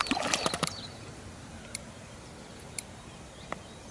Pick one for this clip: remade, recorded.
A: recorded